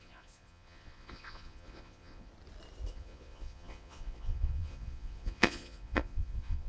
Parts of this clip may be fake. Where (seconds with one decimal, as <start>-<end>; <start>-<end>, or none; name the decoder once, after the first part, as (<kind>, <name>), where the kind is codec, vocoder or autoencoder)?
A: 0.0-2.3 (vocoder, Vocos); 2.9-6.7